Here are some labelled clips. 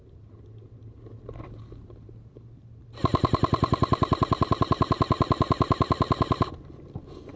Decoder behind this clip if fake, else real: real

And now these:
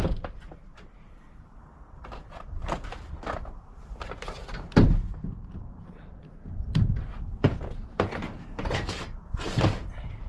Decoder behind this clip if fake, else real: fake, vocoder, BigVGAN v2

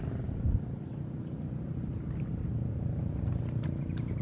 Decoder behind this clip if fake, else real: real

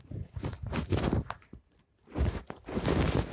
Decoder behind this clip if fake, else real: real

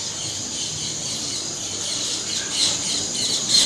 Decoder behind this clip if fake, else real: real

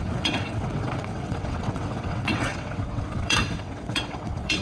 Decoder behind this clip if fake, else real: fake, vocoder, WaveNeXt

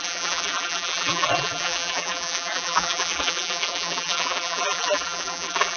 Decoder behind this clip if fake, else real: fake, vocoder, BigVGAN v2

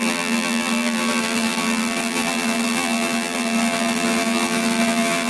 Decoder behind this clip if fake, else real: fake, vocoder, BigVGAN v2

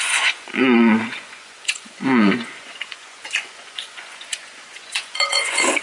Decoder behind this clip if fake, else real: fake, vocoder, Vocos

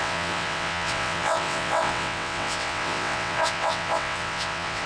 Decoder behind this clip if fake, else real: fake, vocoder, WaveNeXt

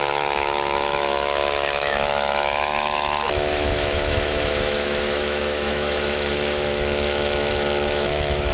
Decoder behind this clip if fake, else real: fake, autoencoder, DAC-VAE